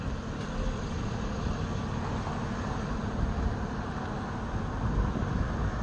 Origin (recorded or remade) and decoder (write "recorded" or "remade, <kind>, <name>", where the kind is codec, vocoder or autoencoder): recorded